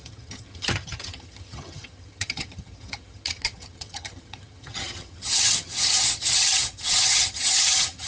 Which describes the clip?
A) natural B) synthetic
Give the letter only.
B